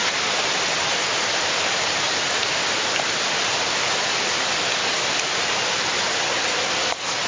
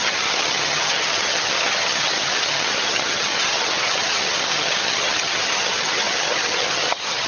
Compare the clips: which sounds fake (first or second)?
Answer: second